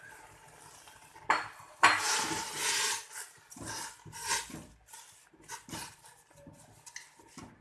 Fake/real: real